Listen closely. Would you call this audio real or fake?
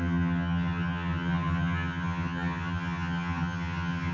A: fake